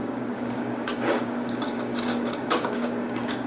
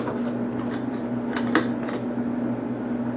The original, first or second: second